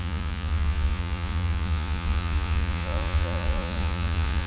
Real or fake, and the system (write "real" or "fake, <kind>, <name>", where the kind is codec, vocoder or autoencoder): fake, vocoder, Vocos